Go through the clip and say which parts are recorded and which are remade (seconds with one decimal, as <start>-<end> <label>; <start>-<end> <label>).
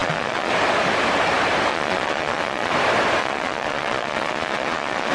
0.0-0.5 remade; 0.5-1.7 recorded; 1.7-2.7 remade; 2.7-3.2 recorded; 3.2-5.1 remade